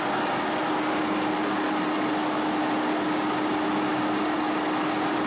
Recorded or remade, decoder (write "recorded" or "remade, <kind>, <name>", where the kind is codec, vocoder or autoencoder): recorded